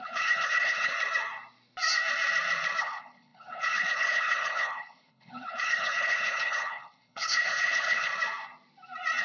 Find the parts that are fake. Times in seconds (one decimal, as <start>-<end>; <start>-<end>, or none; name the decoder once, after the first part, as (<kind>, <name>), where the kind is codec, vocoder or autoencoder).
0.0-0.9 (codec, HILCodec); 2.8-8.1